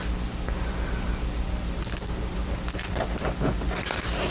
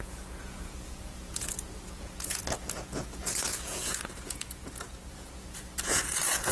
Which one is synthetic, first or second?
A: second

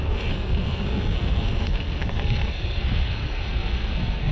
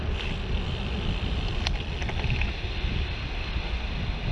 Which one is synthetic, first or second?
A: first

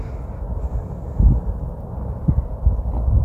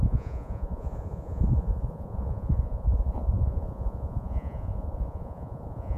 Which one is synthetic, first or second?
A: second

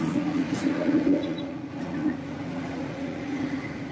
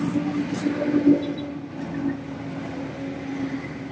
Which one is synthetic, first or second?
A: first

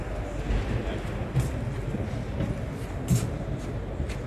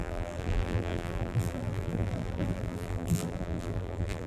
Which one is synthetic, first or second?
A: second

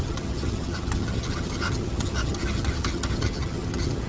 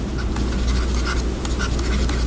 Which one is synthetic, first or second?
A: first